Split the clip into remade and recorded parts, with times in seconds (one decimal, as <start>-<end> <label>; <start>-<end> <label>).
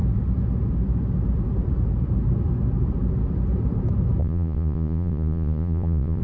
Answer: 0.0-4.2 recorded; 4.2-6.2 remade